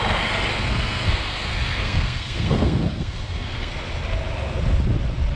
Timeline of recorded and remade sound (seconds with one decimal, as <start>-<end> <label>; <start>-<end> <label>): 0.0-0.5 recorded; 0.5-3.7 remade; 3.7-5.4 recorded